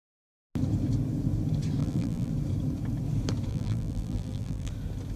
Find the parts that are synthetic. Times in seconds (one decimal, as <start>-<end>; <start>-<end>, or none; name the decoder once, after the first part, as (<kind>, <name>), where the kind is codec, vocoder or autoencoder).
1.8-2.3 (vocoder, BigVGAN v2); 3.5-4.7